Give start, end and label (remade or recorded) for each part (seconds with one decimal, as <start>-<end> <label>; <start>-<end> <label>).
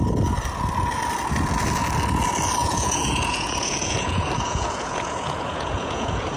0.0-2.6 recorded; 2.6-6.4 remade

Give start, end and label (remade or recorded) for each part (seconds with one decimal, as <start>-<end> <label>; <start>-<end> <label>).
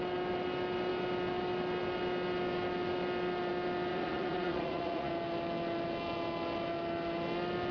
0.0-3.9 recorded; 3.9-5.1 remade; 5.1-7.7 recorded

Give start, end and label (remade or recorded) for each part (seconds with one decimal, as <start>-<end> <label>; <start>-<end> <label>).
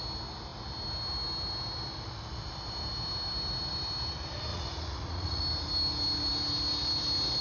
0.0-4.5 recorded; 4.5-5.4 remade; 5.4-7.4 recorded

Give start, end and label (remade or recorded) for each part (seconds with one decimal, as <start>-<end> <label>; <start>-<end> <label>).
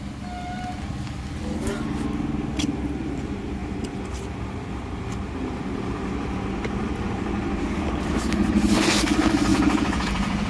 0.0-9.5 recorded; 9.5-10.5 remade